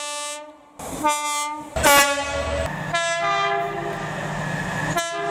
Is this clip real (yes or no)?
yes